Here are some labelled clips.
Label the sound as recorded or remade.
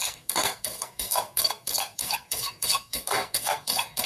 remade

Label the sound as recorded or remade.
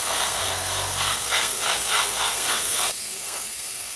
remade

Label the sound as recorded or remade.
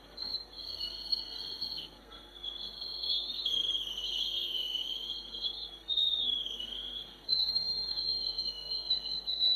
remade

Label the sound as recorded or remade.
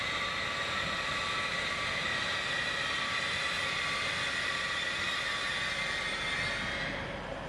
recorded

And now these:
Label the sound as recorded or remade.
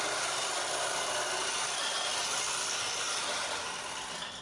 recorded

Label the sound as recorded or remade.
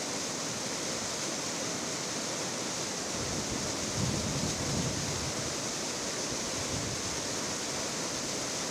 recorded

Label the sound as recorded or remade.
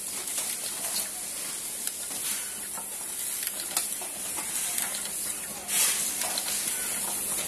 recorded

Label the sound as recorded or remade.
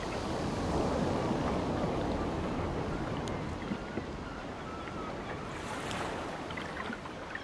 recorded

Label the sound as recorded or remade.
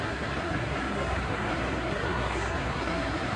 remade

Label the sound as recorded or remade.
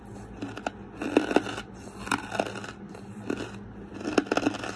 recorded